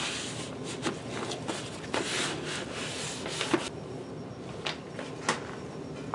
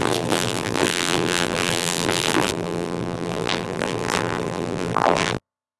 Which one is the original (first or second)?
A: first